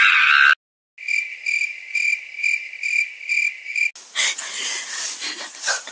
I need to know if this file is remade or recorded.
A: recorded